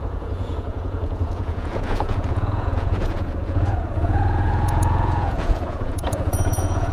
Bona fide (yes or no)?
no